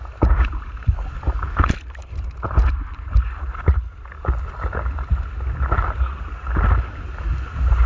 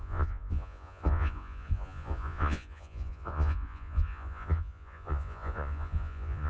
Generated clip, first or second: second